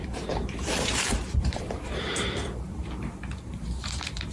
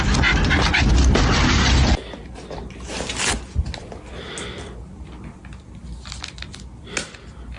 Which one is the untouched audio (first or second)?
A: second